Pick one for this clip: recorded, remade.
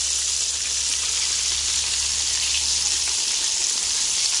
recorded